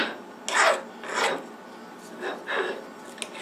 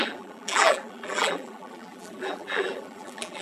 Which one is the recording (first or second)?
first